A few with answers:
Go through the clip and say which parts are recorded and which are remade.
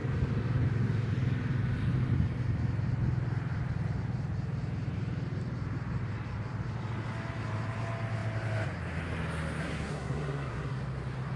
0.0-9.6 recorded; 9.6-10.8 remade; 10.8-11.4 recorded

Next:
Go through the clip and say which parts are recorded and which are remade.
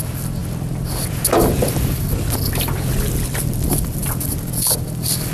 0.0-5.3 recorded